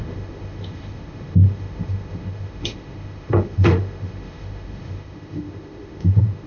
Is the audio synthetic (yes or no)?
yes